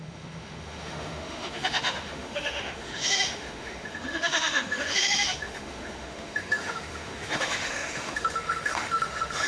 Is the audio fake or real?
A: fake